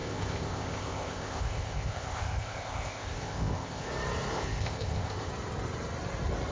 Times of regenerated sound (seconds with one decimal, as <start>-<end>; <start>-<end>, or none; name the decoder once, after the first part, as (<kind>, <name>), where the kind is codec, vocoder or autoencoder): 0.0-3.9 (codec, ZipCodec); 4.3-5.3